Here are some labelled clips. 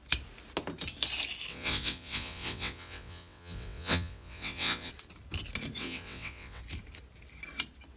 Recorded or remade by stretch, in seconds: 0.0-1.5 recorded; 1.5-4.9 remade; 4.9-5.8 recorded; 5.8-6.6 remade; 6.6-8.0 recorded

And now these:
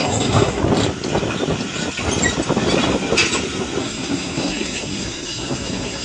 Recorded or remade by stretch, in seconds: 0.0-0.6 remade; 0.6-3.8 recorded; 3.8-6.0 remade

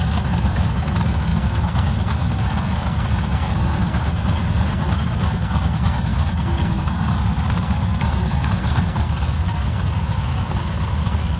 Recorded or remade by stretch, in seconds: 0.0-11.4 remade

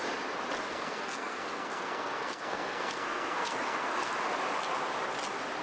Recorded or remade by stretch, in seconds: 0.0-0.7 recorded; 0.7-4.1 remade; 4.1-5.6 recorded